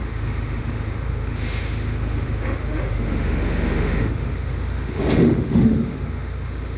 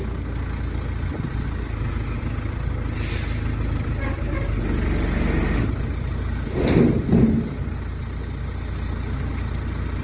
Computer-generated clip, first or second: first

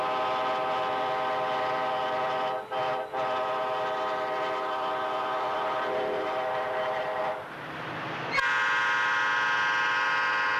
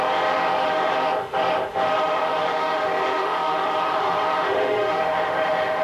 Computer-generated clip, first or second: second